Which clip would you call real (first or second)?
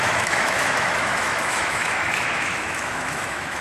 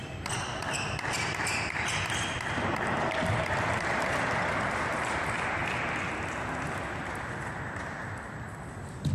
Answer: second